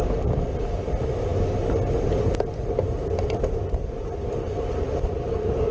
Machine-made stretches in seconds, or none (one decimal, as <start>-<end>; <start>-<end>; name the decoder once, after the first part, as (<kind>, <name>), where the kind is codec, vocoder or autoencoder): none